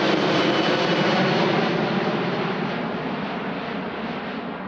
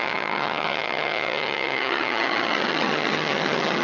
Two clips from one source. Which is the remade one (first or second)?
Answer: second